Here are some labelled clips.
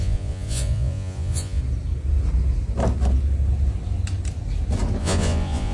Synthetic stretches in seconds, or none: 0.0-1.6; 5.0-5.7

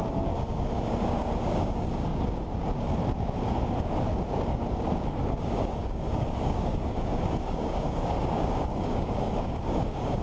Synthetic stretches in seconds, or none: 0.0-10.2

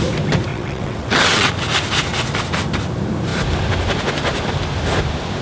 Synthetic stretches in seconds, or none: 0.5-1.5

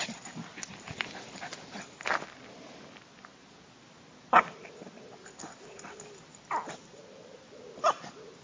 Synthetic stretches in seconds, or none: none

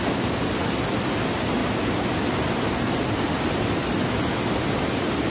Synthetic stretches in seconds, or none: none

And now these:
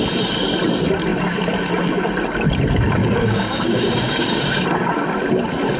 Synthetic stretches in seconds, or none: 3.0-4.4

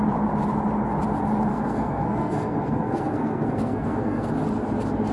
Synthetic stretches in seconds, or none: 1.5-4.3

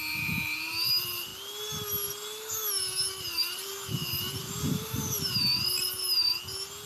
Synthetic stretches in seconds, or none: 0.0-1.3; 3.2-5.5